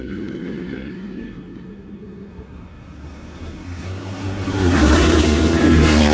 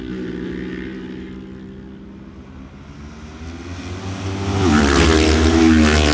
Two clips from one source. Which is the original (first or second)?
second